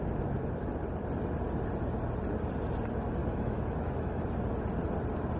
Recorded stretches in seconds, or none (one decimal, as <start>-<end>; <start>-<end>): 0.0-3.2; 4.2-5.4